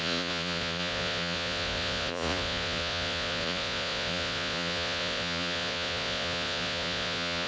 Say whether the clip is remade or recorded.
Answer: remade